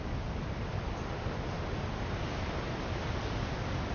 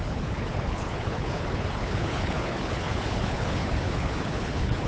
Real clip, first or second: first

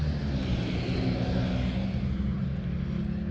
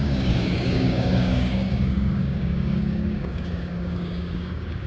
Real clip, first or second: first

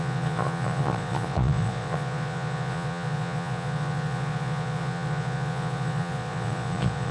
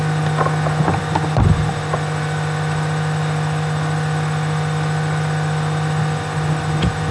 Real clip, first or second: second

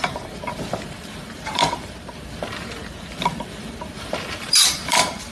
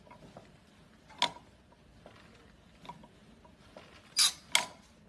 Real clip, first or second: second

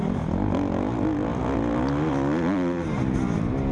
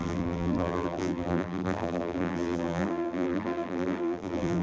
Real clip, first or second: first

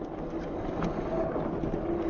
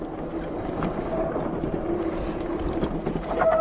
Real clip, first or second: first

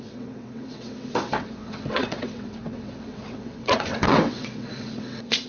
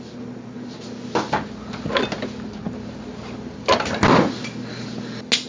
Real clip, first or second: second